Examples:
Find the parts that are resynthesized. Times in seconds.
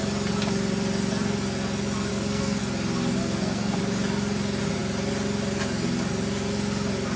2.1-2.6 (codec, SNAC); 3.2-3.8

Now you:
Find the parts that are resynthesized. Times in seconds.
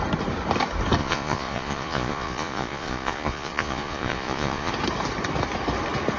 1.0-4.7 (vocoder, Vocos)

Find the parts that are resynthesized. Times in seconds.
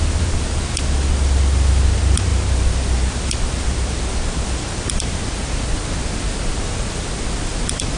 none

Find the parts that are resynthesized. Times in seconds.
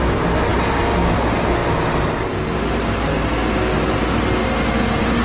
none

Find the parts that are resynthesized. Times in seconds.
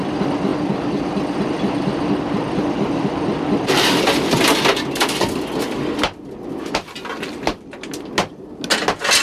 none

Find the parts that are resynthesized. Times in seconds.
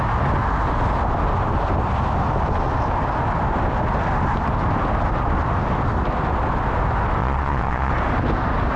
7.2-7.9 (vocoder, Vocos)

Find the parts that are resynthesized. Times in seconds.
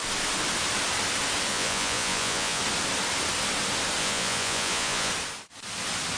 1.5-2.6 (vocoder, Vocos); 4.0-5.1